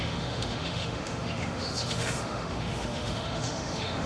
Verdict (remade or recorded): remade